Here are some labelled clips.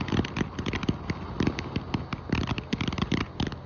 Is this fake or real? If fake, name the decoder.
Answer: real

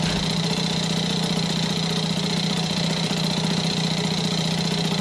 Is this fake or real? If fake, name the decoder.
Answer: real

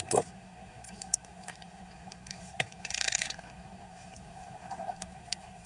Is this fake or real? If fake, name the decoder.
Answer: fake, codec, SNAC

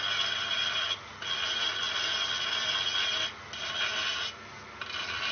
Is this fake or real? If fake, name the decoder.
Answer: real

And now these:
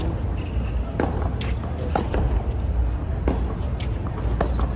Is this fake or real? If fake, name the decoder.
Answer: real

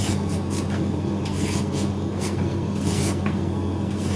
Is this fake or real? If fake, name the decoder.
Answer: fake, codec, SNAC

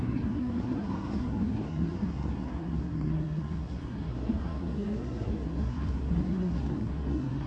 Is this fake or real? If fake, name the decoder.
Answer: fake, codec, SNAC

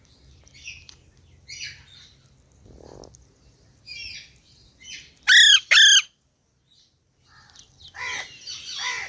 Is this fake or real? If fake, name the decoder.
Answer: real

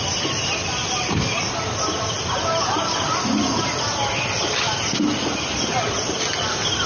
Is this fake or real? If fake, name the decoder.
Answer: real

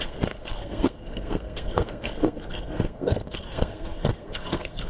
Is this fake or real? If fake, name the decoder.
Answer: fake, codec, SNAC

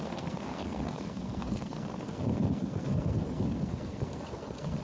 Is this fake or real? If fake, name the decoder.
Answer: fake, codec, SNAC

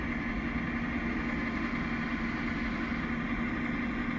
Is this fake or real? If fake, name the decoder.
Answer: real